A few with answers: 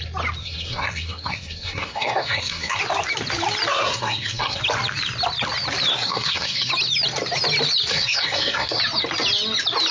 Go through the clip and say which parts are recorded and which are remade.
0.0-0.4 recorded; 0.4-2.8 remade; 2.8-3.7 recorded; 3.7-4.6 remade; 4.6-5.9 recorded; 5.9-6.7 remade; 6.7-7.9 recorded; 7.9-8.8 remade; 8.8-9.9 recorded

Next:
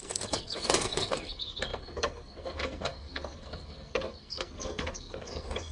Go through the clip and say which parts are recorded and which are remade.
0.0-5.7 remade

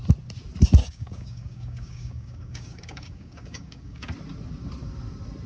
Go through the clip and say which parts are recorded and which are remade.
0.0-0.8 recorded; 0.8-4.1 remade; 4.1-5.5 recorded

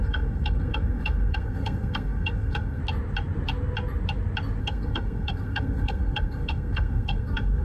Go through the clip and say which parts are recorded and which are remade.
0.0-2.8 remade; 2.8-4.6 recorded; 4.6-7.6 remade

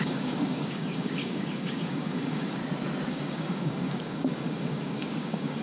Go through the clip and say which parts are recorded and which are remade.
0.0-2.6 remade; 2.6-3.1 recorded; 3.1-5.6 remade